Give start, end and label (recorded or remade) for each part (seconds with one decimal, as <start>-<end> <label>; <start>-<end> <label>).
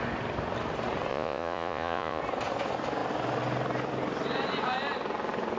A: 0.0-1.1 recorded; 1.1-2.2 remade; 2.2-5.6 recorded